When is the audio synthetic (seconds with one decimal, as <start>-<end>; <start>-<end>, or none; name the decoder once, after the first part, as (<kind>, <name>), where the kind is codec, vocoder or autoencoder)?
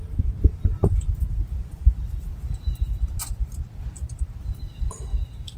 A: 0.5-1.0 (vocoder, BigVGAN v2); 2.0-3.2